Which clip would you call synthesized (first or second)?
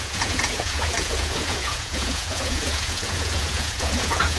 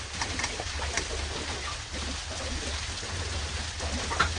first